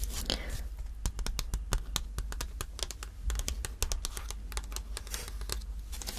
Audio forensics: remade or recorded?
recorded